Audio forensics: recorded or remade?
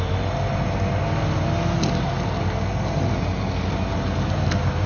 recorded